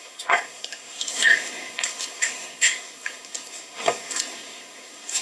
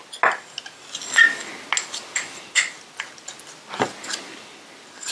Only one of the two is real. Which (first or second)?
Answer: second